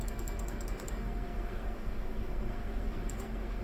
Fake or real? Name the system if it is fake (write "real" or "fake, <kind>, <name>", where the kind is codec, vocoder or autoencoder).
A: fake, codec, SNAC